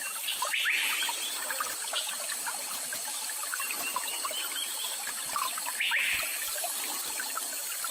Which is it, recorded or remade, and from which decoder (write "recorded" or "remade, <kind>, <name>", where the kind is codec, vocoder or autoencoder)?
recorded